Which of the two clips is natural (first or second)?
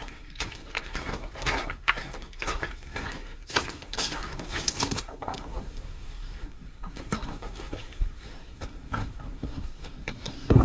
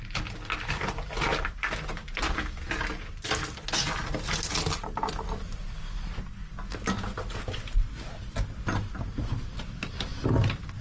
second